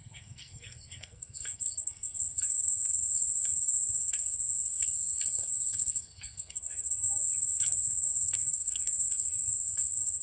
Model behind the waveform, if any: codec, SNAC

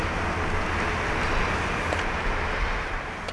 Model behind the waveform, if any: none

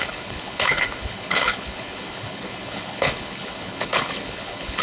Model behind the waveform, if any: codec, HILCodec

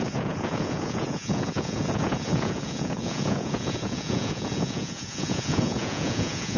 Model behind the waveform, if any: vocoder, Vocos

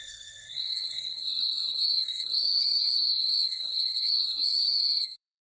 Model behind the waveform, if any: codec, SNAC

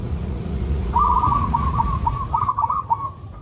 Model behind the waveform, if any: vocoder, Vocos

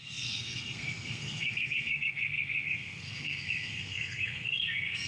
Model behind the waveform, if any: codec, SNAC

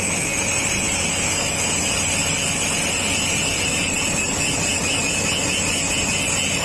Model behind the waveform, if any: none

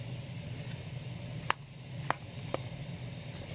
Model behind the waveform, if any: none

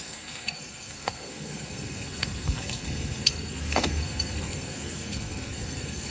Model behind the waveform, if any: codec, SNAC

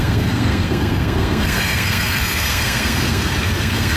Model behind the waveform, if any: codec, SNAC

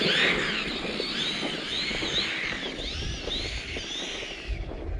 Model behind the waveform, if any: none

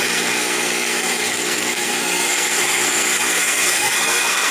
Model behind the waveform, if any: codec, SNAC